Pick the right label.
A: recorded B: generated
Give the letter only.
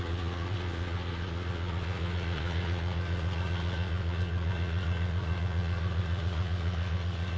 B